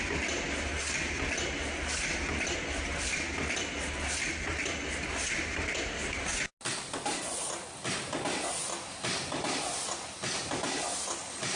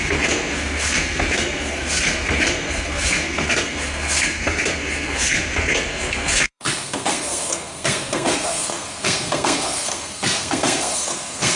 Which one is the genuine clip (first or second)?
first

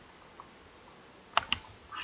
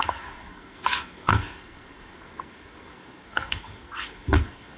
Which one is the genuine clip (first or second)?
first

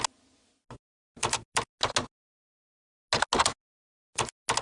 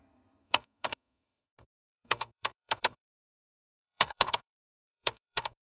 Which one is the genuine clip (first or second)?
first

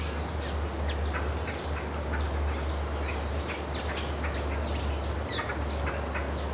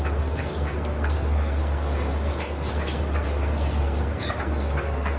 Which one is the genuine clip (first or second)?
first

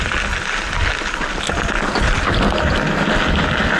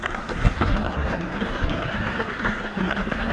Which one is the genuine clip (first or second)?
first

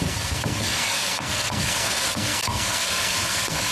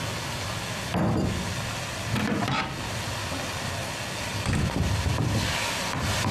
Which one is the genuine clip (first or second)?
second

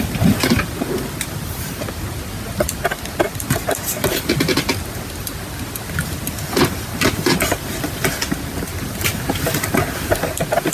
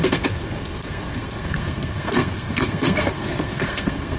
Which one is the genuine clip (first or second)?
first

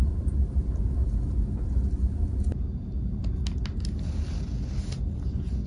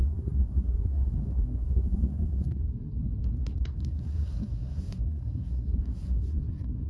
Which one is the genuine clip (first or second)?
first